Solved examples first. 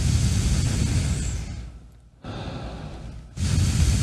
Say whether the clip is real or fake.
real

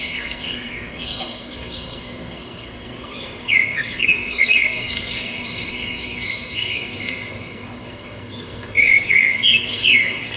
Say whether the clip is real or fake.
fake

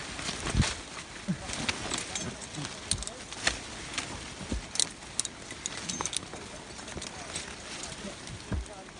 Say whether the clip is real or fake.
real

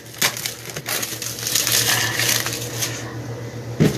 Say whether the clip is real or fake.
real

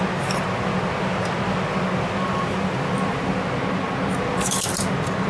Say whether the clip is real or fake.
real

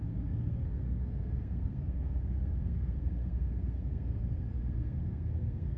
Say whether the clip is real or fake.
fake